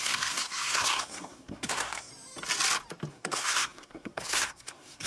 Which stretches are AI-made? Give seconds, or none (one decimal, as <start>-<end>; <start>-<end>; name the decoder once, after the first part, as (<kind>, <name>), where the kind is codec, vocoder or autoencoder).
0.0-2.1 (codec, SNAC); 3.1-5.1